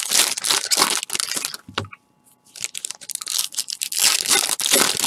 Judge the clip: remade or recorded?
recorded